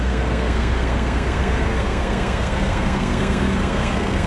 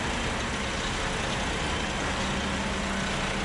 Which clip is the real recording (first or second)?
second